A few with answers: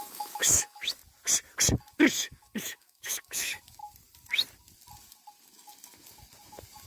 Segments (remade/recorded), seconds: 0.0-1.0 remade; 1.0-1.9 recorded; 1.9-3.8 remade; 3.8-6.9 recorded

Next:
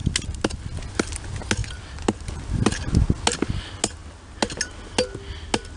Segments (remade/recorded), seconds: 0.0-5.8 recorded

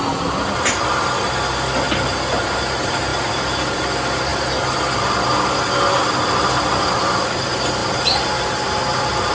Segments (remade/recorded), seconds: 0.0-9.3 recorded

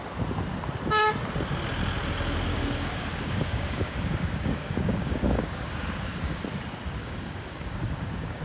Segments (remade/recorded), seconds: 0.0-2.5 recorded; 2.5-6.4 remade; 6.4-7.0 recorded; 7.0-8.4 remade

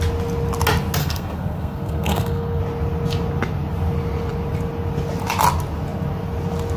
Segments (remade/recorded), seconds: 0.0-1.0 recorded; 1.0-2.6 remade; 2.6-6.8 recorded

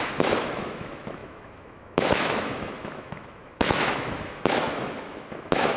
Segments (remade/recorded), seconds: 0.0-5.8 remade

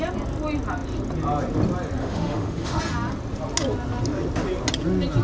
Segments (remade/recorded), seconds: 0.0-2.0 recorded; 2.0-2.8 remade; 2.8-5.2 recorded